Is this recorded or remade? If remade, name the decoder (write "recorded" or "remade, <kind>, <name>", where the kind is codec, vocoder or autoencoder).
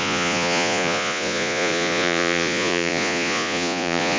remade, vocoder, Vocos